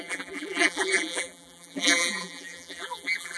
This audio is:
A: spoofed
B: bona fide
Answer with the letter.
A